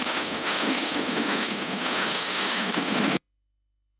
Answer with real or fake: fake